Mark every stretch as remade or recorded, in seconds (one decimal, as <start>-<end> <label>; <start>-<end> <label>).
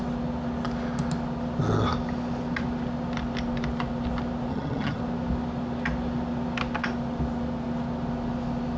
0.0-4.5 recorded; 4.5-5.0 remade; 5.0-8.8 recorded